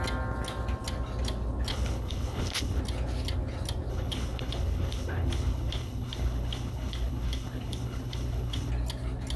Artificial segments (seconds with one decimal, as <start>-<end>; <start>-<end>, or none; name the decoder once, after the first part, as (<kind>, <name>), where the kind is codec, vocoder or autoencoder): 1.7-2.8 (codec, HILCodec); 3.9-8.7